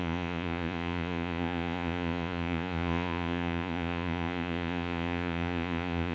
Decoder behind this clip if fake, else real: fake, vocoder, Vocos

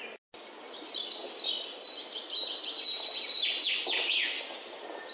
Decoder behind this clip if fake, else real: real